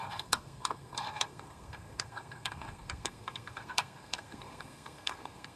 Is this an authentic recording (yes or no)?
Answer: no